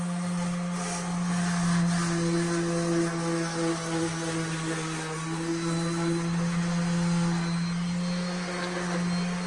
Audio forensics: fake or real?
real